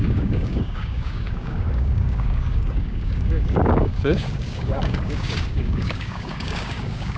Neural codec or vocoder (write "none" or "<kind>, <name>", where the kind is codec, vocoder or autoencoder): codec, DAC